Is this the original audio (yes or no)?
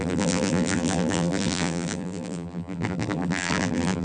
no